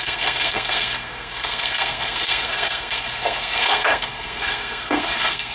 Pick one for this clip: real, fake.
fake